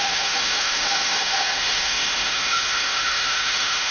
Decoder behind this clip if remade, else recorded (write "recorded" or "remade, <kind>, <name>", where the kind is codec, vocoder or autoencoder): remade, autoencoder, DAC-VAE